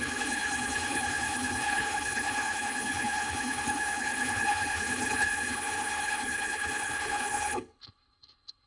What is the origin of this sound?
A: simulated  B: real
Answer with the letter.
A